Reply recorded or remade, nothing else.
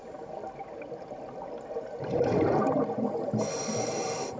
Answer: recorded